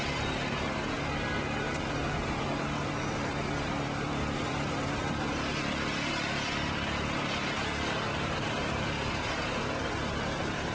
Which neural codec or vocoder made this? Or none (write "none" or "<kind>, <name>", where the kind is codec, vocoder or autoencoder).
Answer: vocoder, BigVGAN v2